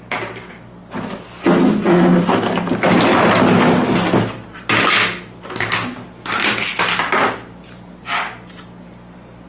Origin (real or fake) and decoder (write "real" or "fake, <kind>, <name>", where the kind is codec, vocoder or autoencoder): real